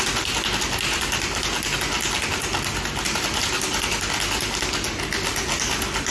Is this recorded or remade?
recorded